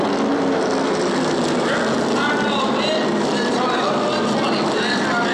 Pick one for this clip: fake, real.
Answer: real